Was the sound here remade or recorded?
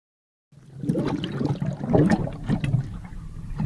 recorded